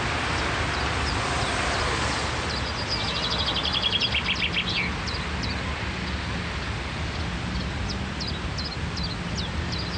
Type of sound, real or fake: real